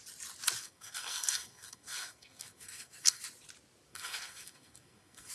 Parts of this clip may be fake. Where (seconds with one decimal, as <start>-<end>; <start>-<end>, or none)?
0.6-3.2; 3.9-5.3